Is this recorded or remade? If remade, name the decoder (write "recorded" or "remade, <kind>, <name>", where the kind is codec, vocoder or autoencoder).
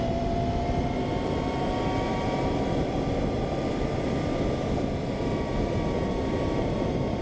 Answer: recorded